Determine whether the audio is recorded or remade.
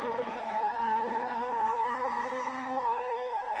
remade